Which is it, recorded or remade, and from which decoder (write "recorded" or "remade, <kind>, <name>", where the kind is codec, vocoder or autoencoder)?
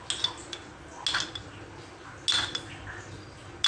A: recorded